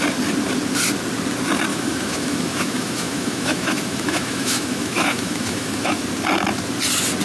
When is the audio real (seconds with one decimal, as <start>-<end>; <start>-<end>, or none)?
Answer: 0.0-1.7; 6.0-7.2